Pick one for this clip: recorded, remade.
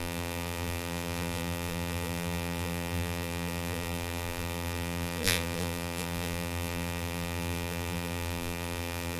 remade